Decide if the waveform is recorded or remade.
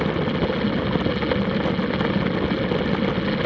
recorded